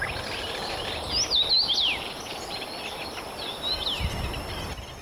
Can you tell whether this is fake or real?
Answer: real